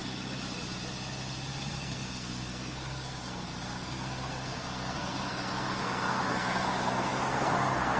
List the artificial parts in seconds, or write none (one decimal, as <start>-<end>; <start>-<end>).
1.7-8.0